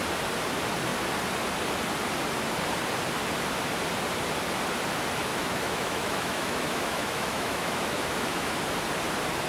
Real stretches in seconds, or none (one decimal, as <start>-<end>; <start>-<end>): 0.0-5.3; 8.6-9.5